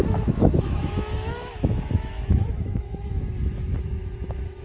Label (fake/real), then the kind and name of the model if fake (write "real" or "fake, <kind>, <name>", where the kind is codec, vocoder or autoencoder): fake, autoencoder, DAC-VAE